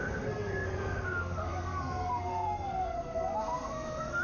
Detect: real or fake fake